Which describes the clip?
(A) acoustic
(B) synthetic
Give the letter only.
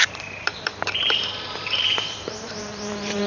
B